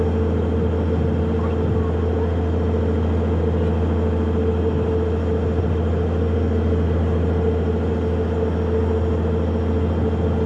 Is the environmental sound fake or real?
real